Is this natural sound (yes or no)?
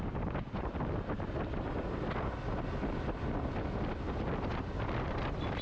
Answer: yes